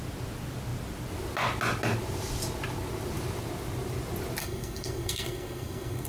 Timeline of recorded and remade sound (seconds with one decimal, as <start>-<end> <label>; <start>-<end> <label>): 0.0-4.4 recorded; 4.4-6.1 remade